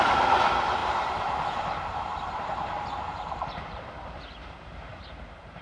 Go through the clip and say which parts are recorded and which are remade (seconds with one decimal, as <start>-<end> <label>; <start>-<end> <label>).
0.0-0.8 recorded; 0.8-4.2 remade; 4.2-4.9 recorded; 4.9-5.6 remade